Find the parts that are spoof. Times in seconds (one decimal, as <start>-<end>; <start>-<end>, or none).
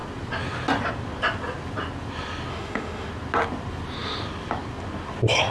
2.5-3.1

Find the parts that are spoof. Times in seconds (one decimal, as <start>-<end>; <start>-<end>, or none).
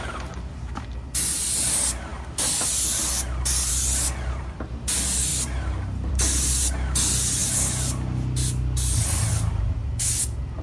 none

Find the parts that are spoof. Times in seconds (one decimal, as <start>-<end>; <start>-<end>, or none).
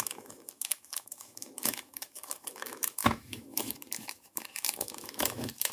0.0-5.7